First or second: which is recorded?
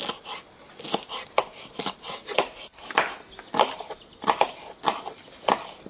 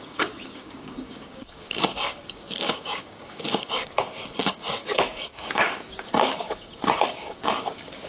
first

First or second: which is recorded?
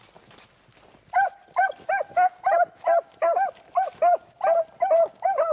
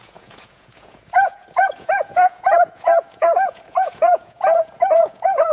first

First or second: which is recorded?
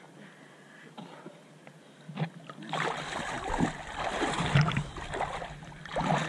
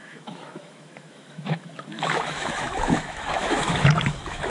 first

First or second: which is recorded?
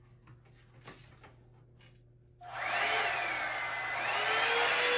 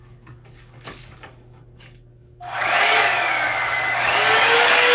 first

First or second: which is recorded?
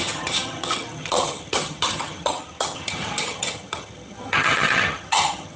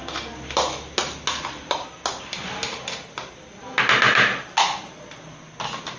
second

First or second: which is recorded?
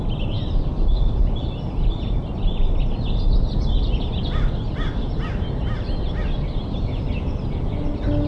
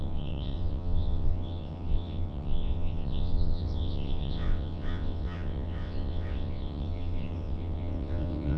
first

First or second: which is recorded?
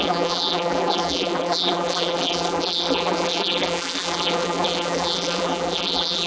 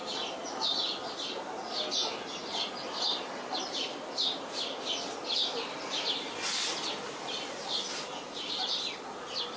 second